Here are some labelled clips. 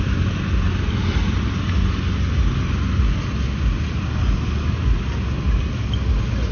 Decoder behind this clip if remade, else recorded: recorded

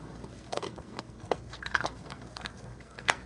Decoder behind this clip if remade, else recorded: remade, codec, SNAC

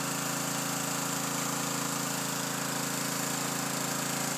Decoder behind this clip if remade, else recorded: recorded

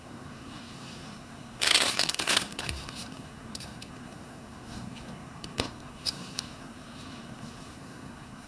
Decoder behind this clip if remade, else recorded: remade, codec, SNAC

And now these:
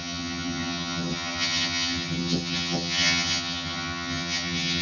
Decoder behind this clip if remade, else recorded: remade, vocoder, HiFi-GAN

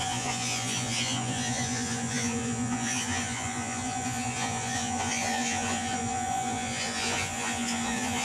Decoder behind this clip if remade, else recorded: remade, vocoder, Vocos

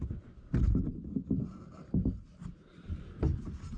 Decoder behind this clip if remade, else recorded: recorded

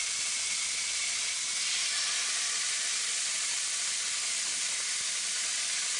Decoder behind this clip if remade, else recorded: recorded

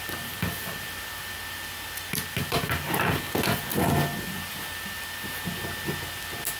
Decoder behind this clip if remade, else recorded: recorded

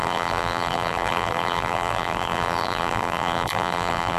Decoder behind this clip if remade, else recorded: remade, vocoder, BigVGAN v2